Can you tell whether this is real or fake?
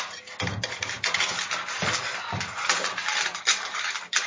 fake